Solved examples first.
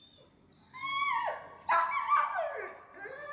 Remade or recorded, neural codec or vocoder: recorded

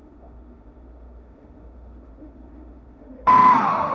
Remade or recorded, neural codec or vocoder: remade, autoencoder, DAC-VAE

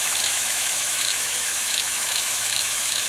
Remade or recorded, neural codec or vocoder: remade, autoencoder, DAC-VAE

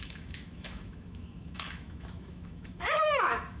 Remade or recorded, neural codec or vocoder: remade, autoencoder, DAC-VAE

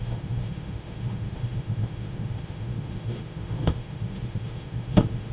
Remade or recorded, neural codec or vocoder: remade, autoencoder, DAC-VAE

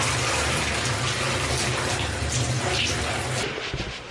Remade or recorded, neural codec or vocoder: recorded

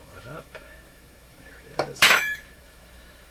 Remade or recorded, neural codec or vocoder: remade, autoencoder, DAC-VAE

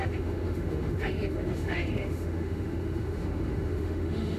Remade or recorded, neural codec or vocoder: remade, autoencoder, DAC-VAE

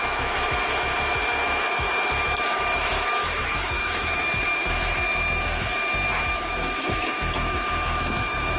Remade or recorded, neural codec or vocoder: remade, autoencoder, DAC-VAE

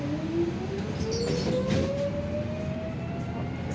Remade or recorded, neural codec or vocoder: recorded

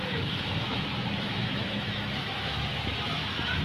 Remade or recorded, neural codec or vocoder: remade, autoencoder, DAC-VAE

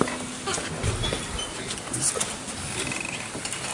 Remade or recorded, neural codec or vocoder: recorded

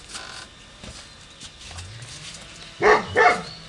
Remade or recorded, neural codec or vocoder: recorded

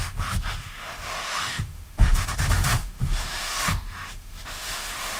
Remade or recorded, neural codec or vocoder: remade, autoencoder, DAC-VAE